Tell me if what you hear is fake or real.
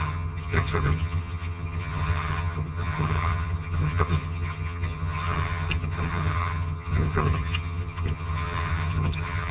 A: fake